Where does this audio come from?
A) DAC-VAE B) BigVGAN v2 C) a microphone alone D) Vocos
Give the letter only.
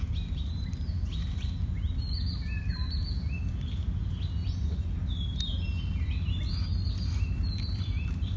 C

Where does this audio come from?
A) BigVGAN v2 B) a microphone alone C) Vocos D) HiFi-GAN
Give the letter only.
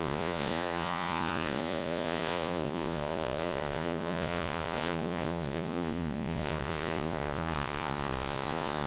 C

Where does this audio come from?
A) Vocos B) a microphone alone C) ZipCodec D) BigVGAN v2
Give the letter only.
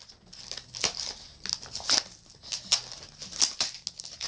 B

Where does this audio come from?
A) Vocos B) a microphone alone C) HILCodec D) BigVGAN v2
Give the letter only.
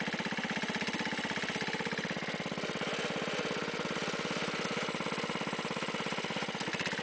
B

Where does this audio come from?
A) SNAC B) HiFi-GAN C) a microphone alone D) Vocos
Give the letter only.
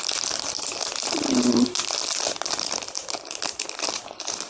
C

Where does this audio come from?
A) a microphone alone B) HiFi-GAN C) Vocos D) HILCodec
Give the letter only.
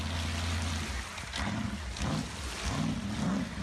A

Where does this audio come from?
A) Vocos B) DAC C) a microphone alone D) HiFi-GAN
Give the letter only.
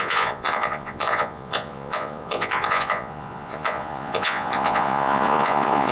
A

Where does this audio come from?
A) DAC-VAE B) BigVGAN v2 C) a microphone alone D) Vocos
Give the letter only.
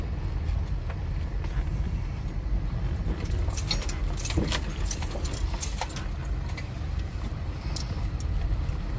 C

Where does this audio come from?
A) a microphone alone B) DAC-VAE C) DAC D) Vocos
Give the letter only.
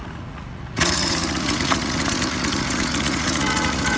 D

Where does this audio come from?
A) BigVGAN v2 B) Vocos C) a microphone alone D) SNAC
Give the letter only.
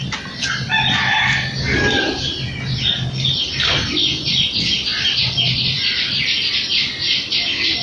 C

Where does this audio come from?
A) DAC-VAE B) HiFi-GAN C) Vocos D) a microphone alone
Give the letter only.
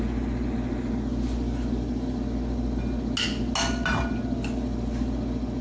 D